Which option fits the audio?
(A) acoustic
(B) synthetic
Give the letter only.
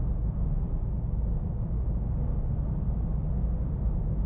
A